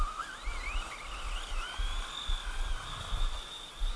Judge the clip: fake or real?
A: real